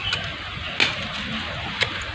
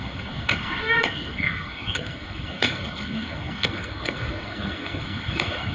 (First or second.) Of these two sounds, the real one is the first